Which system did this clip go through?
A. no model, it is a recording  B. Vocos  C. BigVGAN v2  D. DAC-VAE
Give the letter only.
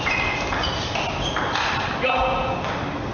A